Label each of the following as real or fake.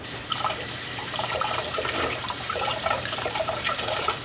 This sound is fake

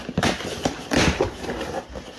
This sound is real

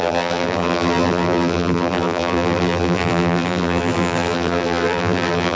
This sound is fake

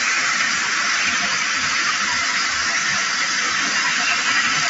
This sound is fake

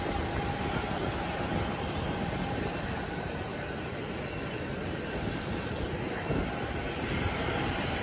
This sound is fake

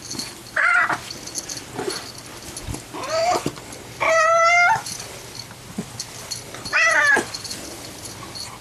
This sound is real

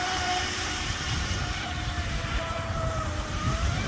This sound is fake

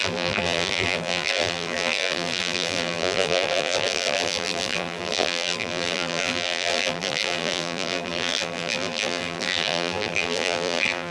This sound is fake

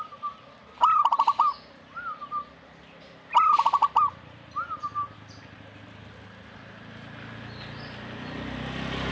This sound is real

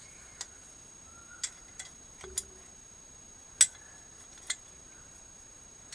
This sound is real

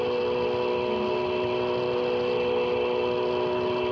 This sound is real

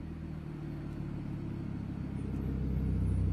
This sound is real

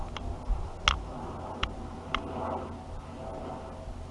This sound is real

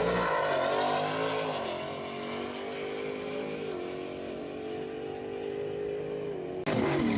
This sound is real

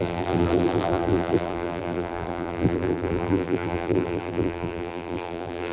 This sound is fake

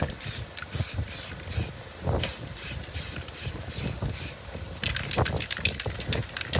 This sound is fake